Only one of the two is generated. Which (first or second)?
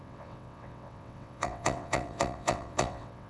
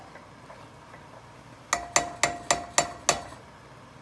first